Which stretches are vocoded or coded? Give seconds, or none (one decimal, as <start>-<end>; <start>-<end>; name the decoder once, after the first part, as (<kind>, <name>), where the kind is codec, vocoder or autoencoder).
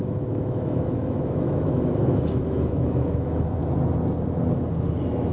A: 0.0-3.6 (autoencoder, DAC-VAE)